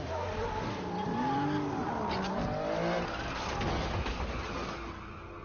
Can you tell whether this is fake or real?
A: real